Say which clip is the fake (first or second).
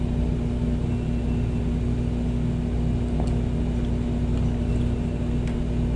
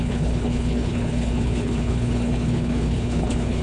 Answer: second